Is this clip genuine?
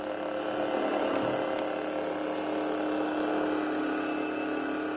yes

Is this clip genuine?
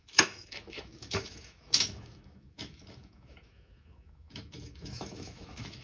no